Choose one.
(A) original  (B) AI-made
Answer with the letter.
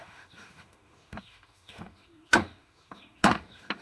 B